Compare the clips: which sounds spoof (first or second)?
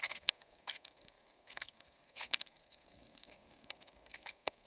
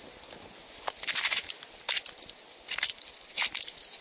first